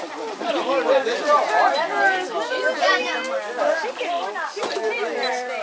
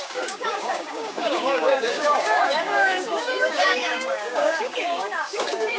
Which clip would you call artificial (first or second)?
second